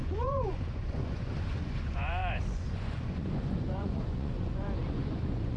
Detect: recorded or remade remade